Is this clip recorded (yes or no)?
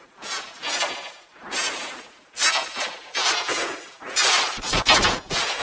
yes